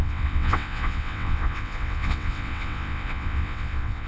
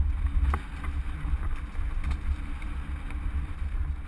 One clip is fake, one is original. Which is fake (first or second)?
first